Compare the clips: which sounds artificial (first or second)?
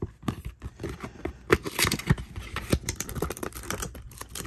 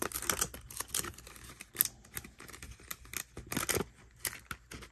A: first